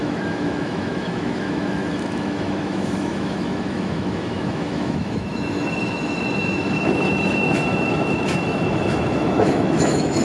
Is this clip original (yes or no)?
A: no